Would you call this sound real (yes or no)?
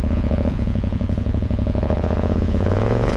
no